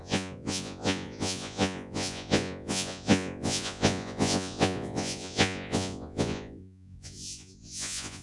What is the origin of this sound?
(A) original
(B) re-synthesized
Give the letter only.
B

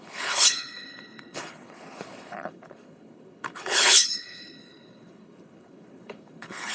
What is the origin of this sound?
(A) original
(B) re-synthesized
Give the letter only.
B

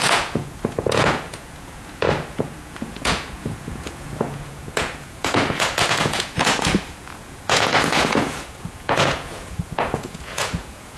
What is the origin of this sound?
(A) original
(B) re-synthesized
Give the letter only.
B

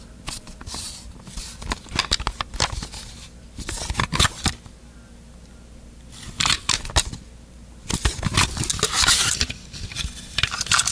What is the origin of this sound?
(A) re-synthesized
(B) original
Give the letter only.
B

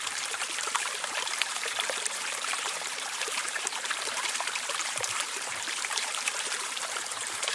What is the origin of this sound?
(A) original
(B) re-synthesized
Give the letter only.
B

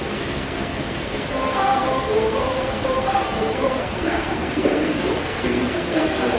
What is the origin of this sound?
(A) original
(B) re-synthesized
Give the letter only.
B